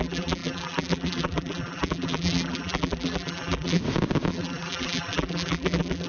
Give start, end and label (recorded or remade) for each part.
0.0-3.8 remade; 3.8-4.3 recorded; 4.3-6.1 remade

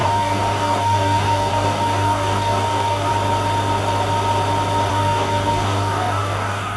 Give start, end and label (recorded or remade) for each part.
0.0-3.1 remade; 3.1-4.9 recorded; 4.9-6.8 remade

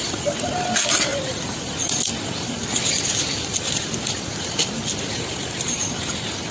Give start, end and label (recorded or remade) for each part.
0.0-6.5 recorded

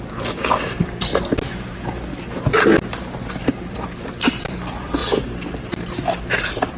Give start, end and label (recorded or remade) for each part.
0.0-1.1 remade; 1.1-3.3 recorded; 3.3-5.0 remade; 5.0-5.9 recorded; 5.9-6.8 remade

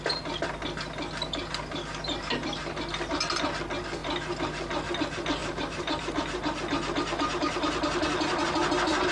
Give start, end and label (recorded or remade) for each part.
0.0-5.4 recorded; 5.4-6.1 remade; 6.1-9.1 recorded

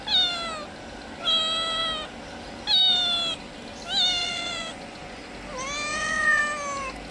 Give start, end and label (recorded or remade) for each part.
0.0-4.2 recorded; 4.2-5.3 remade; 5.3-5.9 recorded; 5.9-6.4 remade; 6.4-7.1 recorded

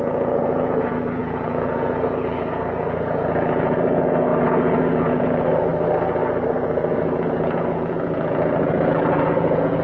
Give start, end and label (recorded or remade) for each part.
0.0-5.7 remade; 5.7-6.5 recorded; 6.5-9.8 remade

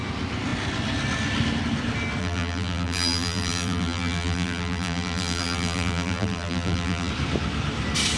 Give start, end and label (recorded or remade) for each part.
0.0-2.2 recorded; 2.2-7.1 remade; 7.1-8.2 recorded